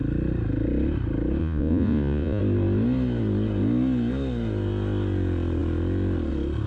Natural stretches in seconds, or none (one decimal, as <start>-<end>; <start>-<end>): 0.0-1.4; 2.4-6.7